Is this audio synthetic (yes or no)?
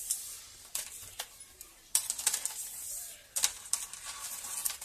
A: no